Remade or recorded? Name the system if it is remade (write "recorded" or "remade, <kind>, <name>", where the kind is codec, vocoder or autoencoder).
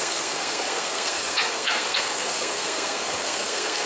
remade, codec, SNAC